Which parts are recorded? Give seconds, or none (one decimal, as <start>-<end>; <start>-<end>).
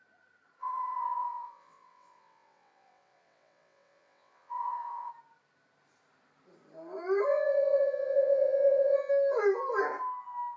0.0-0.6; 5.1-7.3; 9.1-10.6